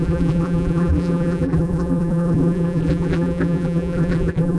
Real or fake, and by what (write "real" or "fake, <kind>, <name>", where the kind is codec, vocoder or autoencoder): fake, vocoder, BigVGAN v2